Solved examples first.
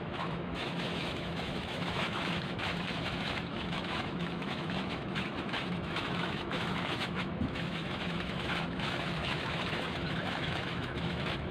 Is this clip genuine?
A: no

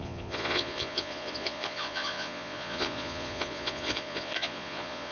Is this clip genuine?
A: no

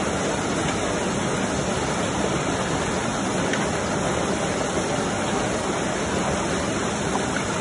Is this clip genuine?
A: yes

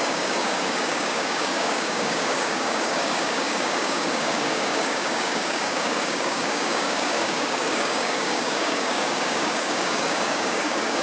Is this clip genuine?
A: no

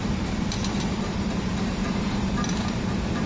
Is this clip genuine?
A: no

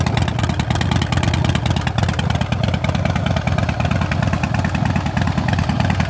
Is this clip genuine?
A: yes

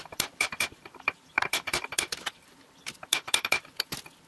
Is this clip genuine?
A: no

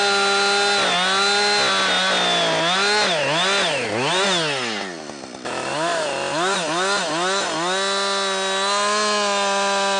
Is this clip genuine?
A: yes